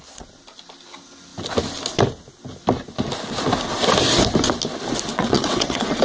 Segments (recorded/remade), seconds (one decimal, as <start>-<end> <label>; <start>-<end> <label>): 0.0-5.1 recorded; 5.1-6.0 remade